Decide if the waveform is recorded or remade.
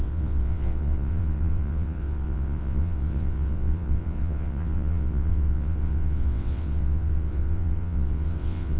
remade